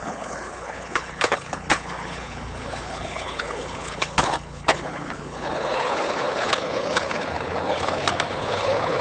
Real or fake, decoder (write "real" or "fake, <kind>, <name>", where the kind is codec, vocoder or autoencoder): fake, codec, HILCodec